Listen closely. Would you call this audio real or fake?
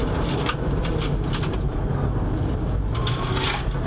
real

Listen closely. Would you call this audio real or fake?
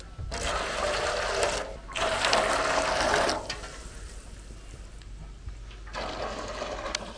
real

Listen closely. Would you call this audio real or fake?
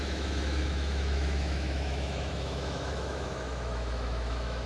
fake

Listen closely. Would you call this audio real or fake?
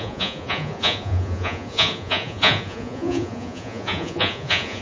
fake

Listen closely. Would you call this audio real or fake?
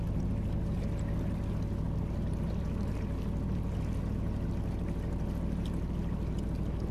real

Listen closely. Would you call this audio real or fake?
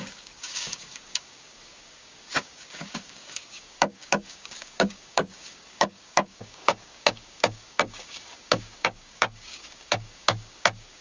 fake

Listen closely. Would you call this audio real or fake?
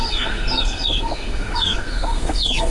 fake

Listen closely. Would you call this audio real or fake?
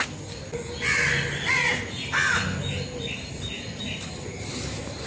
real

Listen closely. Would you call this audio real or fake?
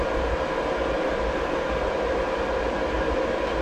real